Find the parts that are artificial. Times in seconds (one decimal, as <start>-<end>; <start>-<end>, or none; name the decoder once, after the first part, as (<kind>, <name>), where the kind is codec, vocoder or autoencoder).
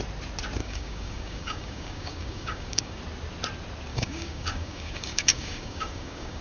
0.6-3.0 (codec, DAC); 3.9-6.4